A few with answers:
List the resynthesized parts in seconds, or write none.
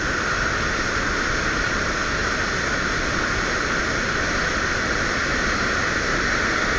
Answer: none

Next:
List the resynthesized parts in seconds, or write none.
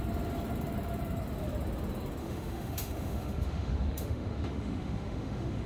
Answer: 2.2-5.7 (autoencoder, DAC-VAE)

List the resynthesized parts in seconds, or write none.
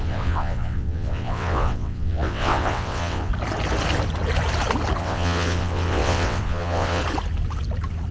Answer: 0.0-3.3 (vocoder, WaveNeXt); 5.0-7.0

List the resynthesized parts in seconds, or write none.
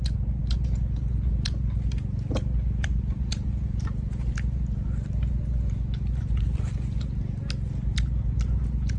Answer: none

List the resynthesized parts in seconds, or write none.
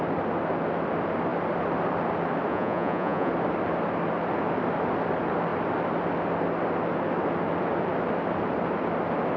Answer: 2.5-3.3 (vocoder, Vocos)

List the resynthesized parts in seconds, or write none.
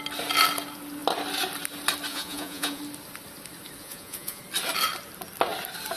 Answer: 2.1-2.8 (vocoder, Vocos); 3.8-4.4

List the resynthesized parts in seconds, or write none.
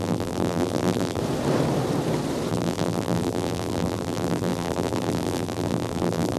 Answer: 0.0-1.2 (vocoder, BigVGAN v2); 2.5-6.4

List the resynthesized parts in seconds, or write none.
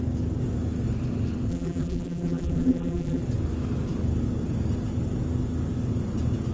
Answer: 1.5-3.2 (vocoder, BigVGAN v2)